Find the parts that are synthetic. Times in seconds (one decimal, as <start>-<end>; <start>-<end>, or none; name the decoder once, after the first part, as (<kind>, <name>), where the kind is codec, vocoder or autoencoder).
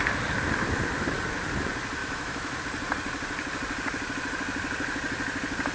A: 2.0-2.6 (autoencoder, DAC-VAE)